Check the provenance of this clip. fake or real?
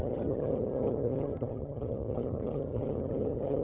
fake